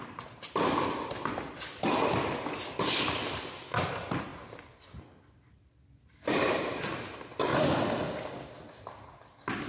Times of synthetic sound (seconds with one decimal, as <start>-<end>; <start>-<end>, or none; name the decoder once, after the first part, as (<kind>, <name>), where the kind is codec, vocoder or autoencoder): none